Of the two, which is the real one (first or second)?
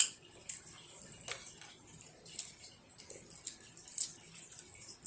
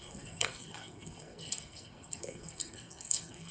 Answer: first